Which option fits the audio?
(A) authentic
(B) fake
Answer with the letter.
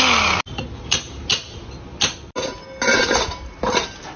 A